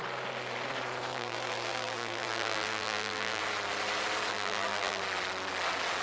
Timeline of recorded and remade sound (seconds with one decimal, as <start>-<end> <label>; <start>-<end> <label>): 0.0-1.1 recorded; 1.1-3.4 remade; 3.4-4.3 recorded; 4.3-5.0 remade; 5.0-6.0 recorded